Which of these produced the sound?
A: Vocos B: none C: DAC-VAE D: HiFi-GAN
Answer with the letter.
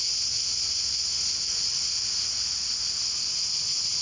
B